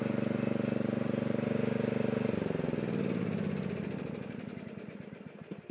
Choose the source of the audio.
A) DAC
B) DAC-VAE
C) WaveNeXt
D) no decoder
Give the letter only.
D